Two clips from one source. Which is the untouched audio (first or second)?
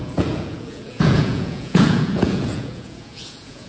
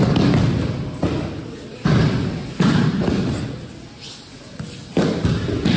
second